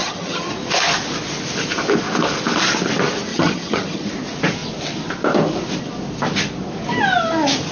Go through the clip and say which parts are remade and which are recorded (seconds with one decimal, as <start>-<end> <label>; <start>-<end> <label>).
0.0-0.5 remade; 0.5-3.3 recorded; 3.3-4.1 remade; 4.1-7.7 recorded